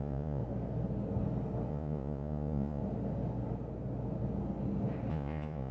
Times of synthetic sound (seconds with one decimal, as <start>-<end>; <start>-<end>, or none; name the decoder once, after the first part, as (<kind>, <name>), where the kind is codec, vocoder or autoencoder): 0.0-0.4 (vocoder, Vocos); 1.7-2.8; 5.1-5.7